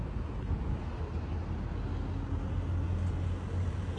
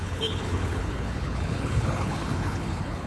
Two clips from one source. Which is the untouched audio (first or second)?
first